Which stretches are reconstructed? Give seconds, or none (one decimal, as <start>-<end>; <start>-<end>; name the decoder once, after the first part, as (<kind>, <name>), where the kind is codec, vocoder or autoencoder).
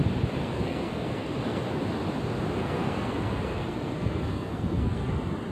0.4-1.8 (codec, SNAC); 2.6-5.1